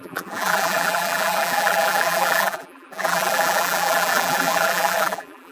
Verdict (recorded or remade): remade